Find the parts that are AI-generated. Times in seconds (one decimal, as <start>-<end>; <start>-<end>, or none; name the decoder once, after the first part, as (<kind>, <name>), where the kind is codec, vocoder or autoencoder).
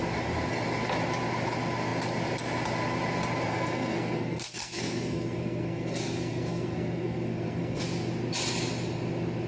3.5-7.8 (codec, SNAC)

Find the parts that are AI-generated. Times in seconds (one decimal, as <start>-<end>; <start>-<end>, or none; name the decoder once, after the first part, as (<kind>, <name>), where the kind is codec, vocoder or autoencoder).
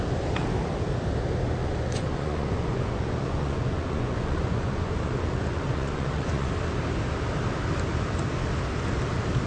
1.6-6.5 (vocoder, Vocos)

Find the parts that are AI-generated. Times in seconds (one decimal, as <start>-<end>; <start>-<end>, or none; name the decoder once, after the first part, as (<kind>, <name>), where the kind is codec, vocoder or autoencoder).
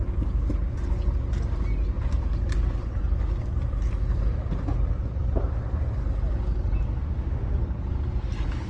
7.0-7.5 (autoencoder, DAC-VAE)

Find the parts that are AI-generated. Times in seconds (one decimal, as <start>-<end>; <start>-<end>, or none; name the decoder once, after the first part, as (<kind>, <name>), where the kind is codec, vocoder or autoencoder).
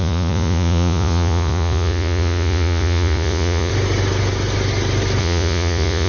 0.0-3.7 (vocoder, Vocos); 5.2-6.1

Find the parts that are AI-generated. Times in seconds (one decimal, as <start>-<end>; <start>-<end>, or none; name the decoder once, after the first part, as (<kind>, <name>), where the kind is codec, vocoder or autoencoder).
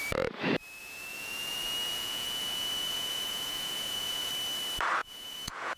0.8-4.3 (vocoder, Vocos); 5.0-5.8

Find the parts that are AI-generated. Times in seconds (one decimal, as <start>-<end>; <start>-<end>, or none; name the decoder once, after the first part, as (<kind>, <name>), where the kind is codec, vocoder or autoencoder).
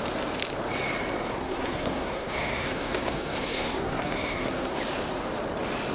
1.3-4.8 (codec, SNAC)